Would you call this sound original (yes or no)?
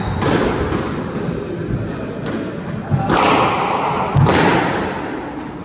yes